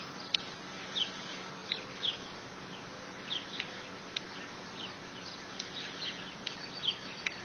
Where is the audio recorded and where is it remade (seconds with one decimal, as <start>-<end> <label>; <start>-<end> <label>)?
0.0-7.4 recorded